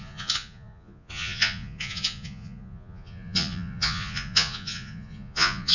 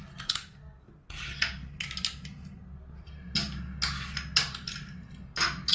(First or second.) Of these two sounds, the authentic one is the second